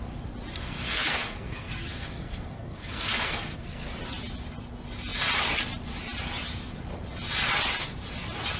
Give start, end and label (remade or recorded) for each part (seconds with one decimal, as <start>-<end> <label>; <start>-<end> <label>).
0.0-0.5 recorded; 0.5-3.9 remade; 3.9-8.6 recorded